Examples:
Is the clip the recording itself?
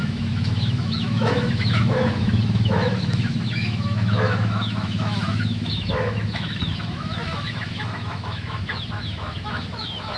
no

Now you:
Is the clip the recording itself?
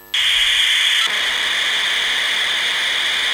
yes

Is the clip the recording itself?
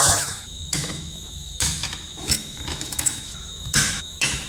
no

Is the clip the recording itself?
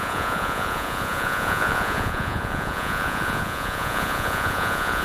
no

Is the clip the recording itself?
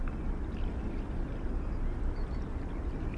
yes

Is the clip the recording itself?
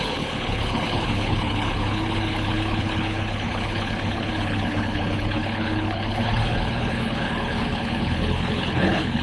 no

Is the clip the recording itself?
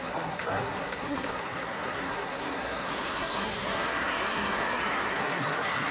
no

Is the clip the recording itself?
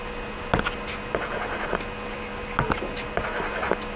no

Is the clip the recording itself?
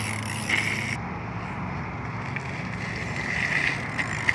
yes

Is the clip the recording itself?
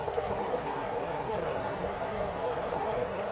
no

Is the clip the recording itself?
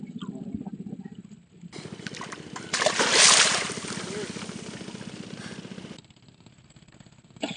yes